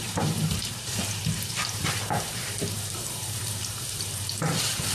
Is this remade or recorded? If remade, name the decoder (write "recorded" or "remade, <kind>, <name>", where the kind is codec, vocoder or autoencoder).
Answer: remade, vocoder, BigVGAN v2